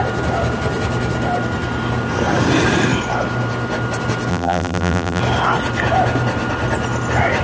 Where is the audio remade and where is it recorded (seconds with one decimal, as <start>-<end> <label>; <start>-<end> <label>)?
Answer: 0.0-4.3 recorded; 4.3-5.2 remade; 5.2-7.4 recorded